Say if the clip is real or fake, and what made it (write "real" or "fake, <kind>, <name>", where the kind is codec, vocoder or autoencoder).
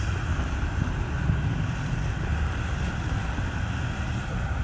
real